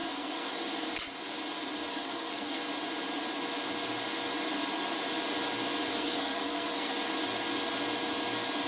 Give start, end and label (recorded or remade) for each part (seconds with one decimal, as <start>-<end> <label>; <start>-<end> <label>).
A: 0.0-0.5 remade; 0.5-1.9 recorded; 1.9-2.6 remade; 2.6-5.9 recorded; 5.9-6.9 remade; 6.9-8.7 recorded